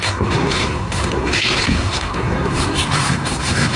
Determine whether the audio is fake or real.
fake